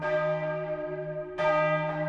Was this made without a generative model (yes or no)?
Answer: yes